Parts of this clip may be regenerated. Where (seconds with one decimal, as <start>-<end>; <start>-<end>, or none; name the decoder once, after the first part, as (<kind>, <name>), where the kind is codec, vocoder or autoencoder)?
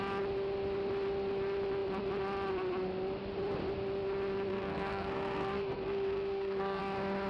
4.5-6.8 (codec, SNAC)